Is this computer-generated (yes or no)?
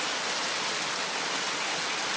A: no